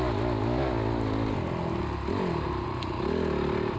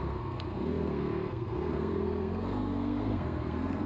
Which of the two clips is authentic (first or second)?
first